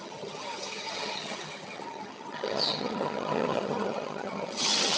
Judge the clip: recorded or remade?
remade